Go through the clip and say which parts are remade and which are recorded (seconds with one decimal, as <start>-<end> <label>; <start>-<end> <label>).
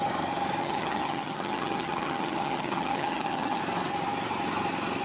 0.0-0.6 recorded; 0.6-3.6 remade; 3.6-5.0 recorded